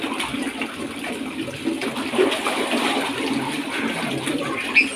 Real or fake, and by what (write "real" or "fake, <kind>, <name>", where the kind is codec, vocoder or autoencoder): real